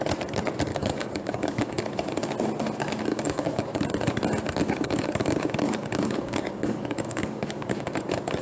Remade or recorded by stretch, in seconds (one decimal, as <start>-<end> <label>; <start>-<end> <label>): 0.0-0.7 recorded; 0.7-1.8 remade; 1.8-3.1 recorded; 3.1-3.8 remade; 3.8-4.6 recorded; 4.6-7.9 remade; 7.9-8.4 recorded